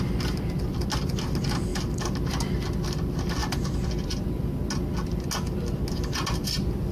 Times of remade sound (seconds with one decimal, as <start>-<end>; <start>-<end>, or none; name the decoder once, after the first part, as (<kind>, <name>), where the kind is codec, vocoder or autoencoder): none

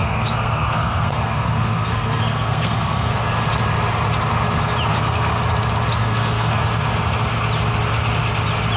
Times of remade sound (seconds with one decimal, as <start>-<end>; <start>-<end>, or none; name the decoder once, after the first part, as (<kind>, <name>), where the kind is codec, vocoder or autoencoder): 0.0-3.1 (codec, SNAC); 4.9-5.4; 6.0-6.6

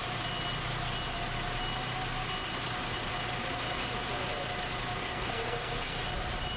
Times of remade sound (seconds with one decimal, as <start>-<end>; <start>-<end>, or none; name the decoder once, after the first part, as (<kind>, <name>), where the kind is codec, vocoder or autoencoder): 5.0-6.0 (codec, SNAC)

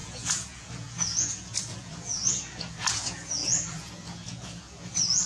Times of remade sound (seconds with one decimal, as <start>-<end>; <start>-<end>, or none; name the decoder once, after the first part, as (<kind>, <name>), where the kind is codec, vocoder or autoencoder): 0.0-5.3 (vocoder, Vocos)

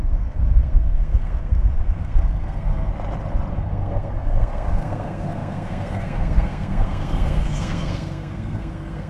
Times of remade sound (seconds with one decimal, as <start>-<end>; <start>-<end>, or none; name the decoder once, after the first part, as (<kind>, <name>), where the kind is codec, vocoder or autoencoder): 0.0-2.9 (codec, SNAC); 3.5-9.1

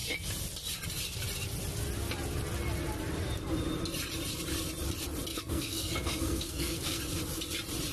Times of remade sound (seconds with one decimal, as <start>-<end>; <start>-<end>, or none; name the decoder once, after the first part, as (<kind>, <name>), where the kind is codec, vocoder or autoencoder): 5.3-7.0 (codec, SNAC)

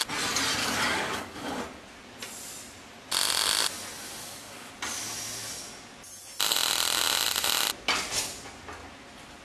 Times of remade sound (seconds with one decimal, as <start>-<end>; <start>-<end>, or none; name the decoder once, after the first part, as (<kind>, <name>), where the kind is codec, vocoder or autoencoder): 0.6-1.6 (codec, DAC); 4.2-4.7